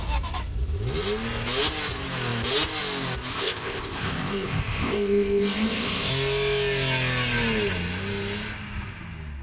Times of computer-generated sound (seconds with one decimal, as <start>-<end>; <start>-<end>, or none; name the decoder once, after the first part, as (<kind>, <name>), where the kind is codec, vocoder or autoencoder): 3.3-6.1 (codec, ZipCodec)